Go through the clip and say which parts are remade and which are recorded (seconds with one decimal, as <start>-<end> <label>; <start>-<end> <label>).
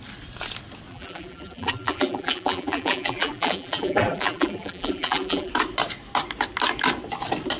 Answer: 0.0-0.9 recorded; 0.9-5.5 remade; 5.5-7.6 recorded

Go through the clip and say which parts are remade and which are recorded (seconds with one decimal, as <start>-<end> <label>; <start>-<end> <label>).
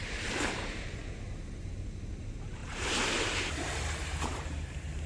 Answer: 0.0-1.0 remade; 1.0-2.2 recorded; 2.2-5.1 remade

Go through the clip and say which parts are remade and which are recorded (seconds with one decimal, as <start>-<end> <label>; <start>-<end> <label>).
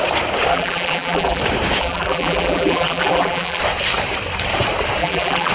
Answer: 0.0-0.5 recorded; 0.5-1.4 remade; 1.4-1.8 recorded; 1.8-3.6 remade; 3.6-5.0 recorded; 5.0-5.5 remade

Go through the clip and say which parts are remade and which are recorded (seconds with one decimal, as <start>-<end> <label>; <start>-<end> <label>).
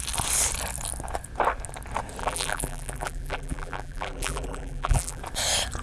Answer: 0.0-2.2 recorded; 2.2-5.2 remade; 5.2-5.8 recorded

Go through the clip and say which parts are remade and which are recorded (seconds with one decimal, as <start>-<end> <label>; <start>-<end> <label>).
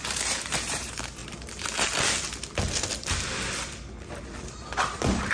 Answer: 0.0-1.2 remade; 1.2-4.4 recorded; 4.4-5.3 remade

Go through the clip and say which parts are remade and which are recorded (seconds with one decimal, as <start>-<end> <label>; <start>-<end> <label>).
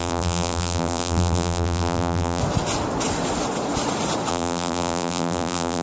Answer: 0.0-2.4 remade; 2.4-4.3 recorded; 4.3-5.8 remade